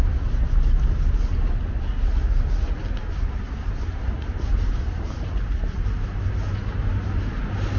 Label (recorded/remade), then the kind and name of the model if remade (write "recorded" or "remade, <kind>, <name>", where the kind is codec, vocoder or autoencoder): recorded